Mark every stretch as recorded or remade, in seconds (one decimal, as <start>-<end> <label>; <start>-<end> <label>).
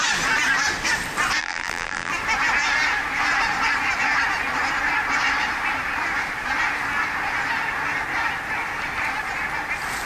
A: 0.0-1.4 recorded; 1.4-2.1 remade; 2.1-10.1 recorded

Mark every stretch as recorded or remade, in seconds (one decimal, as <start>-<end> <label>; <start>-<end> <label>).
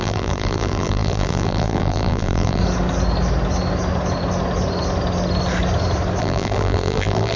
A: 0.0-2.6 remade; 2.6-6.2 recorded; 6.2-7.4 remade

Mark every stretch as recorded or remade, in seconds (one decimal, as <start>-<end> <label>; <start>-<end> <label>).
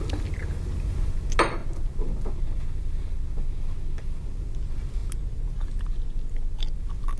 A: 0.0-7.2 recorded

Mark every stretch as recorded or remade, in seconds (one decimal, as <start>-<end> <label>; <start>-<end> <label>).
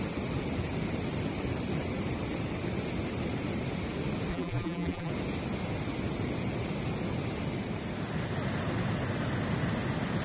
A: 0.0-4.3 recorded; 4.3-5.1 remade; 5.1-10.2 recorded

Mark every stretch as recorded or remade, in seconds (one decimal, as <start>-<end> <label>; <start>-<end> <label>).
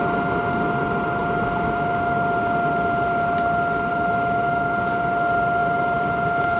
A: 0.0-5.6 recorded; 5.6-6.6 remade